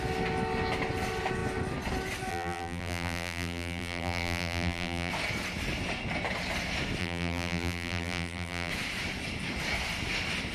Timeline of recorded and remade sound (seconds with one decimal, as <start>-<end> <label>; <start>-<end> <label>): 0.0-2.3 recorded; 2.3-5.1 remade; 5.1-7.0 recorded; 7.0-8.7 remade; 8.7-10.5 recorded